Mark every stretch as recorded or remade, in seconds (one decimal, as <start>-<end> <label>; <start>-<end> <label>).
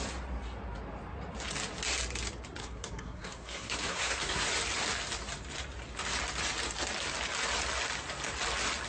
0.0-2.6 recorded; 2.6-4.5 remade; 4.5-8.9 recorded